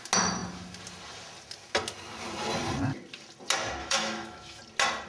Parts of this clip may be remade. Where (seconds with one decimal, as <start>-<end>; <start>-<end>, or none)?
3.8-4.6